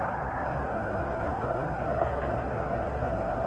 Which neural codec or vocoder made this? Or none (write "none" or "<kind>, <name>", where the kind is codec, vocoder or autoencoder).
codec, SNAC